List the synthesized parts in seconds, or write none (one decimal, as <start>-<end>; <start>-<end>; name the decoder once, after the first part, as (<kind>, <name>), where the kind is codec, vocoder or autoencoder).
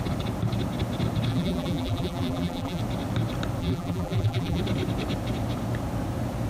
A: 1.3-2.8 (vocoder, BigVGAN v2); 3.6-4.6